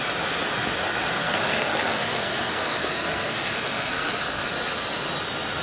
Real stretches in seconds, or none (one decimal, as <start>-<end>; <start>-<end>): 0.0-1.2; 4.5-5.6